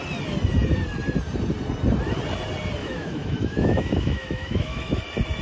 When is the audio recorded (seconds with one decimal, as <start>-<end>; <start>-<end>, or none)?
0.0-2.8; 5.0-5.4